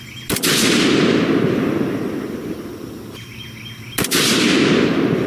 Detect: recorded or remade recorded